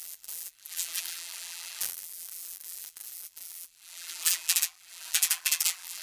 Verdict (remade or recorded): remade